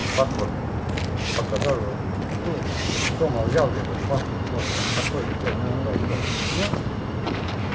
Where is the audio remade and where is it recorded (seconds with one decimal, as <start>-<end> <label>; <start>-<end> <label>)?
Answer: 0.0-7.7 recorded